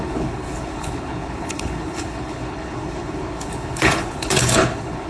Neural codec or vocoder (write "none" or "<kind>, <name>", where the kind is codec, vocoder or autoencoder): codec, HILCodec